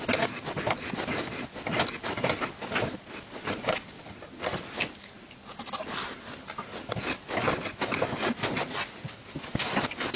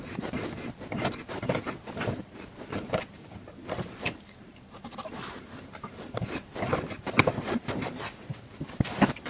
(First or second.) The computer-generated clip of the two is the second